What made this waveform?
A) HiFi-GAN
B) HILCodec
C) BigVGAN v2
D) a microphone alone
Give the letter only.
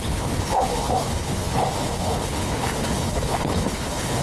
B